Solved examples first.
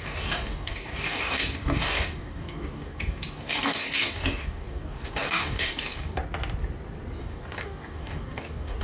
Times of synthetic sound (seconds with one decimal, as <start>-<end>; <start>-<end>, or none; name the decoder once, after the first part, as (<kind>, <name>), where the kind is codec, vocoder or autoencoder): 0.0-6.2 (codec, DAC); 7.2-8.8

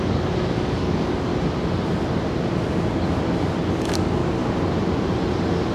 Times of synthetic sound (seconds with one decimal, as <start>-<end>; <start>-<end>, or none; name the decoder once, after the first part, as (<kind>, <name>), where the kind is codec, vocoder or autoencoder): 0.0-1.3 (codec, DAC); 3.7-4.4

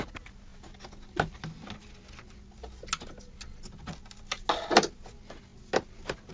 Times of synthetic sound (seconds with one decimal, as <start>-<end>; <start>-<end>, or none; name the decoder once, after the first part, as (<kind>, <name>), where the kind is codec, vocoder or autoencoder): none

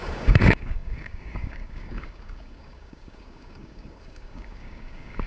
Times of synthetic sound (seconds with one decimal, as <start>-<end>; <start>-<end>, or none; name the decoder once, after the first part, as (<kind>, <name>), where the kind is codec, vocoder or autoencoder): 0.0-5.3 (codec, DAC)

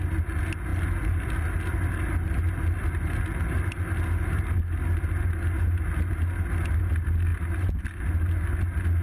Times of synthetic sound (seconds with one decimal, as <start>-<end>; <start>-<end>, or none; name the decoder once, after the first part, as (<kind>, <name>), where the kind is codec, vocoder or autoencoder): none

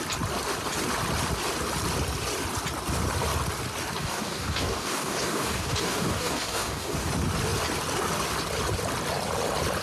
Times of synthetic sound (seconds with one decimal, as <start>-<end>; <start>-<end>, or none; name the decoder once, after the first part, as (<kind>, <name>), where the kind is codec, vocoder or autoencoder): 4.0-7.1 (codec, DAC)

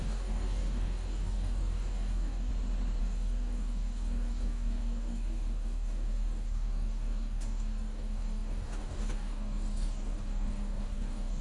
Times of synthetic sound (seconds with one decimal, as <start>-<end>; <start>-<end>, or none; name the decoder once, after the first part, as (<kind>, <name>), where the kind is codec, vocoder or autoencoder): 0.0-2.5 (codec, DAC); 3.0-11.4